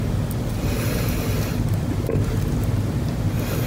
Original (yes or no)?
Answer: yes